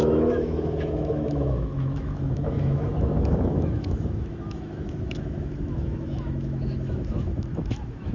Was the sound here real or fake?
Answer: fake